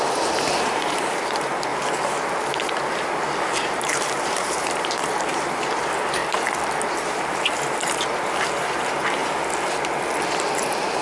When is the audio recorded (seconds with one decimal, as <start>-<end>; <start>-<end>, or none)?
1.7-2.6; 6.2-6.9; 9.2-10.4